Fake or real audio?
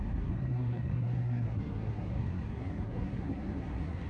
fake